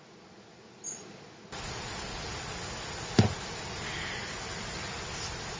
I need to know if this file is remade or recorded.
recorded